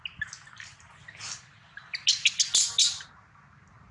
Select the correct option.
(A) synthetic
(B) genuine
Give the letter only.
B